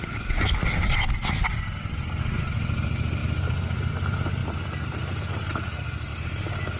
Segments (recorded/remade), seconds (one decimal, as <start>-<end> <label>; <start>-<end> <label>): 0.0-6.8 recorded